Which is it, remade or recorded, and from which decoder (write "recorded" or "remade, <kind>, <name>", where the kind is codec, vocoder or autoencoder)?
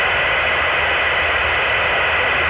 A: recorded